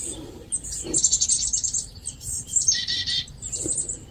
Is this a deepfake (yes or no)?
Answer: yes